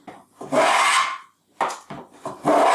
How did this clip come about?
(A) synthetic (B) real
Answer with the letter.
B